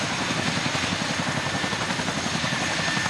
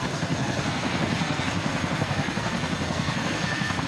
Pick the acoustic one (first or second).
first